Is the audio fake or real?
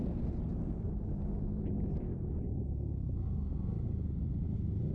real